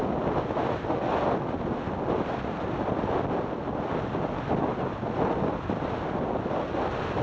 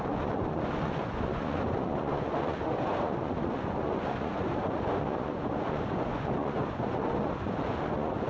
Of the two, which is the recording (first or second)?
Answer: first